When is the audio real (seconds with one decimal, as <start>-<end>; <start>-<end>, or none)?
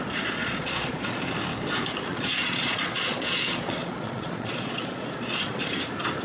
0.0-0.4; 1.2-2.1; 5.8-6.2